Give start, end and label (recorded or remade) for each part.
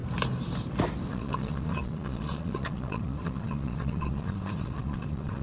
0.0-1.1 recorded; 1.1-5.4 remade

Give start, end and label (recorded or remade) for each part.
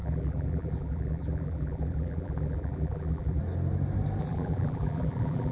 0.0-3.4 remade; 3.4-4.2 recorded; 4.2-5.5 remade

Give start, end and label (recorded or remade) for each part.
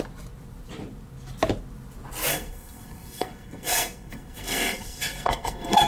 0.0-2.3 recorded; 2.3-5.9 remade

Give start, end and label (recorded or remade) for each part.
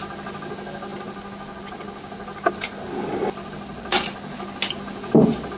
0.0-5.6 recorded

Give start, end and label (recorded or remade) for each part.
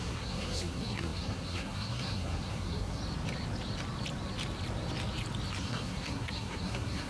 0.0-3.0 remade; 3.0-5.6 recorded; 5.6-7.1 remade